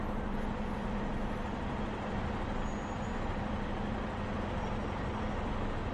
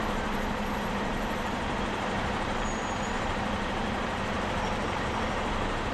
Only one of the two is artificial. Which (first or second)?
second